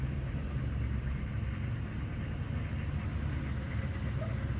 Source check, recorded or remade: recorded